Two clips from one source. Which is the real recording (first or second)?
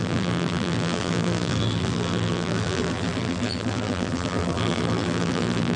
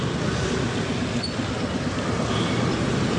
second